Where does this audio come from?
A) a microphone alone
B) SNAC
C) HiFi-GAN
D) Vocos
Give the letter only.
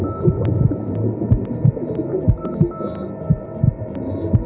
A